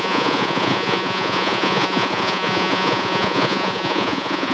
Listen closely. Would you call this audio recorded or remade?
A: remade